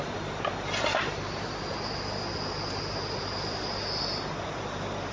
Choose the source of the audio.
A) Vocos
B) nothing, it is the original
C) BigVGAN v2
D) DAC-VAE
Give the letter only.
B